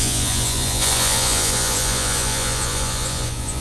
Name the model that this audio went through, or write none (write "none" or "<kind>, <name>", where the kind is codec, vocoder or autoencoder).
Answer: vocoder, Vocos